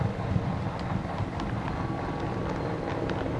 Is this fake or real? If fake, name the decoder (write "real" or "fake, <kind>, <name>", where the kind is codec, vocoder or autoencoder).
real